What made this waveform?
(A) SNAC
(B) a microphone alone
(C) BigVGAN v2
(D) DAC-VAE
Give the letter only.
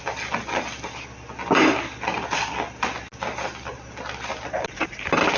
B